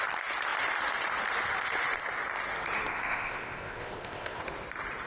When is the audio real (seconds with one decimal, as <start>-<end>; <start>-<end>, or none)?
0.0-2.9; 4.4-5.1